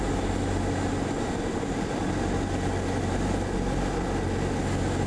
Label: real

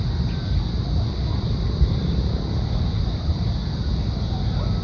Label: real